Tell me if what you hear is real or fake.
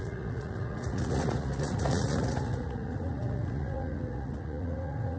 fake